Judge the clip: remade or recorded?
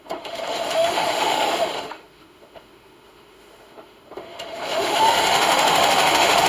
remade